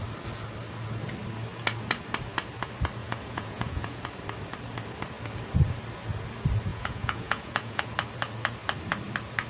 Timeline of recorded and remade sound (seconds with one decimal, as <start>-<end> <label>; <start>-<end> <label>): 0.0-3.0 recorded; 3.0-4.0 remade; 4.0-6.7 recorded; 6.7-7.8 remade; 7.8-9.5 recorded